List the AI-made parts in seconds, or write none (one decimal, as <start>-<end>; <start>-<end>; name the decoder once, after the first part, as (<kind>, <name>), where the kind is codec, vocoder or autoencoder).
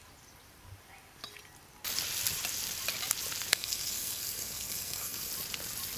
3.5-5.3 (codec, SNAC)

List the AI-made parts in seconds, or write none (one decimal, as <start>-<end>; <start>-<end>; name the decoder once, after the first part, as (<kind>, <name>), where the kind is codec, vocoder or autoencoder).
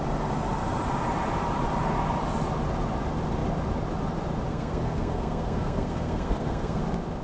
4.5-6.8 (codec, SNAC)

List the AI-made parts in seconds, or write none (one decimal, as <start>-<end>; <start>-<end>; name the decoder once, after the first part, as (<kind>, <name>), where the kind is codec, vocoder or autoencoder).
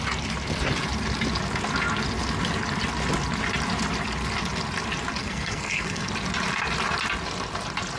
5.2-6.1 (codec, SNAC)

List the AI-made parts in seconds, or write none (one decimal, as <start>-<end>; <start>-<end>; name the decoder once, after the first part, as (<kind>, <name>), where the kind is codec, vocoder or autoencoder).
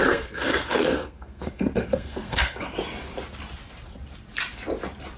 0.0-2.7 (codec, SNAC)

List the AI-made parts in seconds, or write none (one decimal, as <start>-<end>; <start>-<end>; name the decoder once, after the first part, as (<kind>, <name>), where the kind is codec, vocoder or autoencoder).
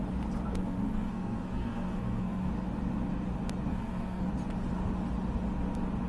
0.6-2.5 (codec, SNAC); 3.7-4.3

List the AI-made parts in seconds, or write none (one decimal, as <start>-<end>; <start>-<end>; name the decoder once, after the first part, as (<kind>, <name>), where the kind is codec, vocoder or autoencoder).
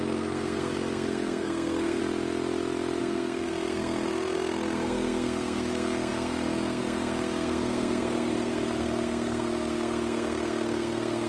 0.0-2.0 (codec, SNAC); 3.0-11.3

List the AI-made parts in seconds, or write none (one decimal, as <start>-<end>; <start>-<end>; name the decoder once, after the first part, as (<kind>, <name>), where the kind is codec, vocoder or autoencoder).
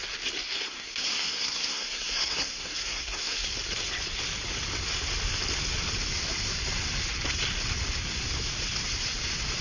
0.5-3.5 (codec, SNAC)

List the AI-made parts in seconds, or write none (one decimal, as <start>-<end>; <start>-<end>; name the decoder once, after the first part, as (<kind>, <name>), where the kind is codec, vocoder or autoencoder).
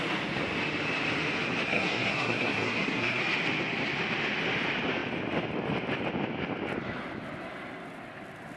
1.7-3.2 (codec, SNAC)